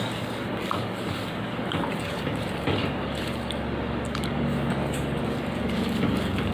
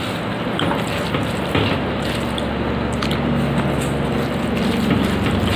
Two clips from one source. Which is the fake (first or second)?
first